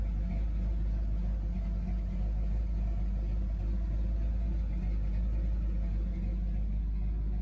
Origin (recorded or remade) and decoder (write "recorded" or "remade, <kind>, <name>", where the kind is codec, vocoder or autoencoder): recorded